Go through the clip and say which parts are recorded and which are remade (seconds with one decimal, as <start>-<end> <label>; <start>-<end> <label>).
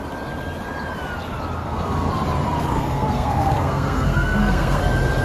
0.0-1.6 recorded; 1.6-2.1 remade; 2.1-2.7 recorded; 2.7-4.8 remade; 4.8-5.2 recorded